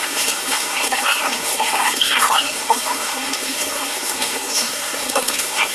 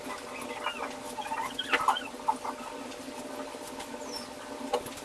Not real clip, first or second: first